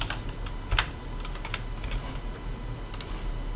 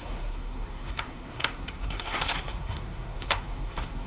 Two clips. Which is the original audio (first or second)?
first